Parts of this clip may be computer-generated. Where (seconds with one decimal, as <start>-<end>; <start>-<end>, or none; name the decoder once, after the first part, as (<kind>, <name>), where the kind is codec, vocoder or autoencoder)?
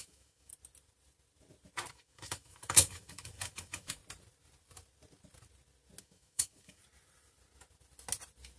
0.0-0.5 (autoencoder, DAC-VAE); 1.9-4.0; 6.0-6.8